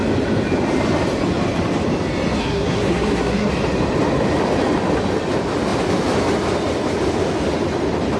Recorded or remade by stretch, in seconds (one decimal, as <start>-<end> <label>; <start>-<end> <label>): 0.0-2.4 recorded; 2.4-3.5 remade; 3.5-8.2 recorded